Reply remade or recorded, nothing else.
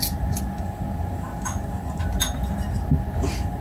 recorded